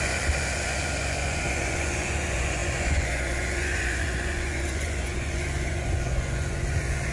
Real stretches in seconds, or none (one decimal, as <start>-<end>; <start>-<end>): none